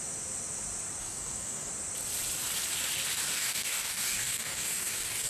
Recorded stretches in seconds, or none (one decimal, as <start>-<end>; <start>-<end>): 0.0-1.0; 1.7-3.3

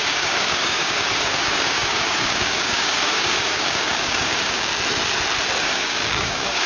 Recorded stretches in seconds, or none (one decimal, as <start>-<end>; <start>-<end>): 4.7-5.6